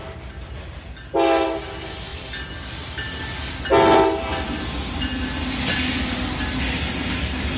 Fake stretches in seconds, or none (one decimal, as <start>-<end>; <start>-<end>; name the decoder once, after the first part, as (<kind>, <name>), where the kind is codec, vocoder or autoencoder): none